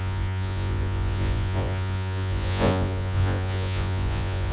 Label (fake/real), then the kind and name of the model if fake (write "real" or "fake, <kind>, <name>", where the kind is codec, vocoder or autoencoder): fake, vocoder, Vocos